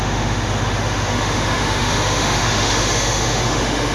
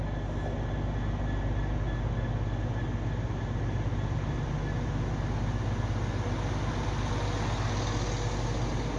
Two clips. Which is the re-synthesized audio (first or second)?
first